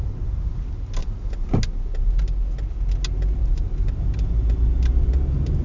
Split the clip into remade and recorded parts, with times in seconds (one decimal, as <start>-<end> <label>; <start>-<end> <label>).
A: 0.0-0.5 remade; 0.5-1.0 recorded; 1.0-1.6 remade; 1.6-3.4 recorded; 3.4-4.0 remade; 4.0-5.6 recorded